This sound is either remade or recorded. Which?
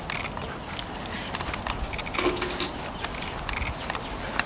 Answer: recorded